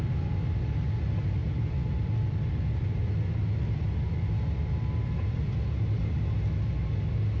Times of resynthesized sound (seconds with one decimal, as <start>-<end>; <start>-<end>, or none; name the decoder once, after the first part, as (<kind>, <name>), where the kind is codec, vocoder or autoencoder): none